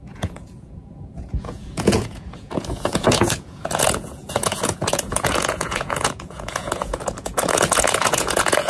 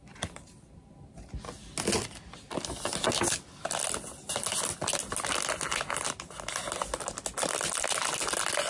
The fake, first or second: first